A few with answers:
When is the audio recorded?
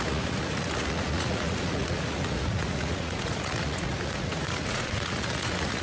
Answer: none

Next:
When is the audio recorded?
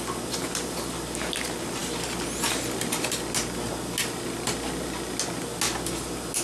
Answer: 0.0-6.4